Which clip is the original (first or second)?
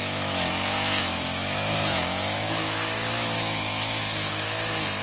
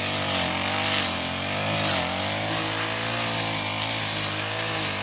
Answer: second